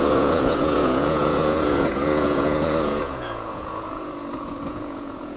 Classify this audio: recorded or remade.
remade